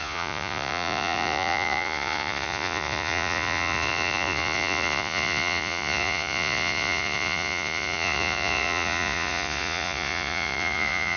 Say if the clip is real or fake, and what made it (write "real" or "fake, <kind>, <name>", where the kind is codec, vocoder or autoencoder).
fake, vocoder, Vocos